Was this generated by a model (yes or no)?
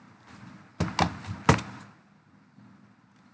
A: no